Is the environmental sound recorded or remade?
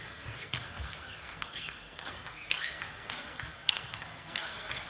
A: remade